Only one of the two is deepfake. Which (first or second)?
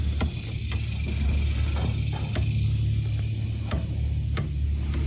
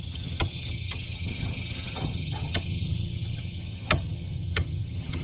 second